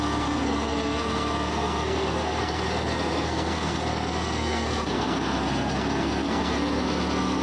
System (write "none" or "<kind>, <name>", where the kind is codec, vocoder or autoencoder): codec, SNAC